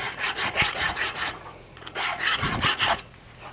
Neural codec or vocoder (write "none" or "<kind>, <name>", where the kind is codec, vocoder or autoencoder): vocoder, Vocos